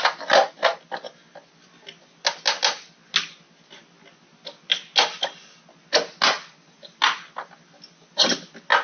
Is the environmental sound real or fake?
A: real